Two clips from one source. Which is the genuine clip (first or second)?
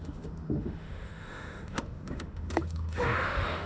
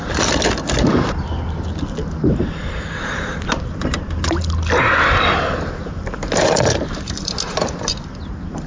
second